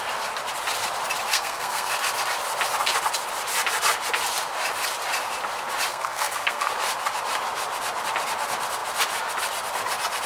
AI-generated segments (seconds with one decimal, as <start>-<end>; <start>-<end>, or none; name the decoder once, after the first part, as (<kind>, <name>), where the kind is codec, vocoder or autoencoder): 1.3-1.9 (codec, SNAC); 5.9-6.7